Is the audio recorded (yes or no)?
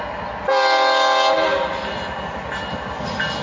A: yes